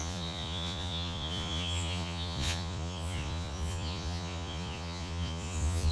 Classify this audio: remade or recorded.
remade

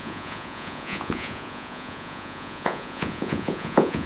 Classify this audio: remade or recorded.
remade